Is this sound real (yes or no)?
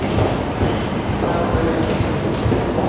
yes